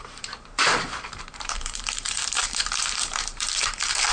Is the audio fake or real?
fake